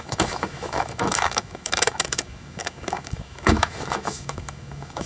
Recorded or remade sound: remade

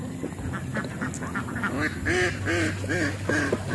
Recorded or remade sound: recorded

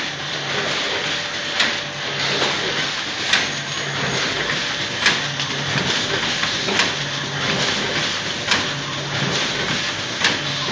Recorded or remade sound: recorded